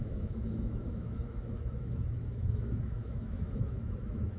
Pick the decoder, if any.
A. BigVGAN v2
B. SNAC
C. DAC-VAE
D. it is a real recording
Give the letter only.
C